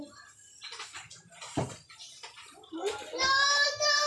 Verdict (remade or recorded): recorded